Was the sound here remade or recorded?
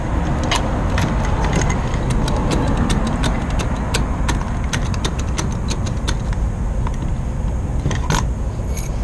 recorded